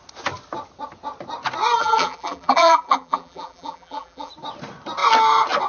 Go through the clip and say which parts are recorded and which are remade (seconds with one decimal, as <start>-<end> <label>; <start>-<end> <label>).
0.0-1.8 recorded; 1.8-4.3 remade; 4.3-5.7 recorded

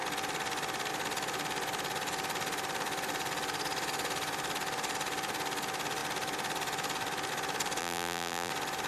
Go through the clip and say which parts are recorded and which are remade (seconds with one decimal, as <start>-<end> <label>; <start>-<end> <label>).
0.0-7.8 recorded; 7.8-8.5 remade; 8.5-8.9 recorded